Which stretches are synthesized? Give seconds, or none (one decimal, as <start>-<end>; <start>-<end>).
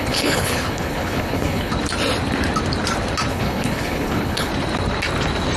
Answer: 0.0-1.7; 3.3-4.5